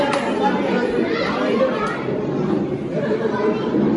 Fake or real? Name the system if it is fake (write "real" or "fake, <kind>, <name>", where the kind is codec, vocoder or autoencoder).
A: fake, vocoder, BigVGAN v2